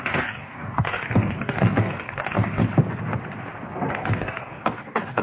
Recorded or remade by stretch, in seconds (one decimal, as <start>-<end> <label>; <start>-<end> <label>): 0.0-2.6 remade; 2.6-3.9 recorded; 3.9-5.2 remade